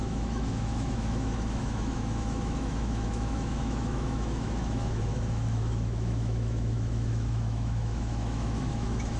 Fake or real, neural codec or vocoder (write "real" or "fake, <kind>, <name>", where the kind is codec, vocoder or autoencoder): fake, autoencoder, DAC-VAE